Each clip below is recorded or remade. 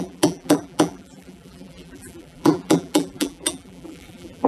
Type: remade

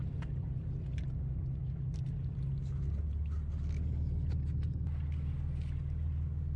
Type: recorded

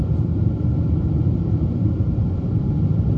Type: remade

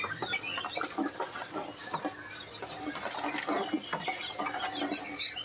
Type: recorded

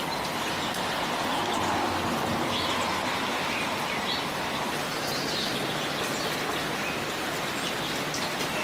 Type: recorded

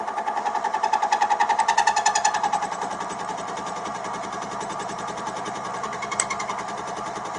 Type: remade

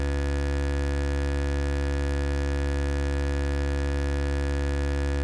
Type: recorded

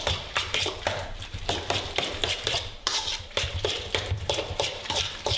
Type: remade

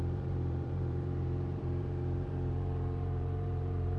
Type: remade